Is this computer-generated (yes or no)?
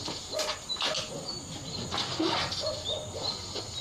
no